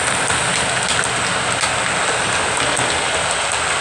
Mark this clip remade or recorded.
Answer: recorded